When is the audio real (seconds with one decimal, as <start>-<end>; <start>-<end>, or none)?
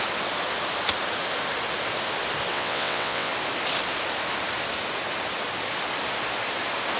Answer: 0.0-2.5; 3.3-7.0